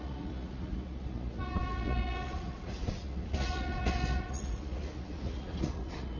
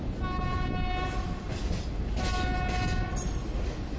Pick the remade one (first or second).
first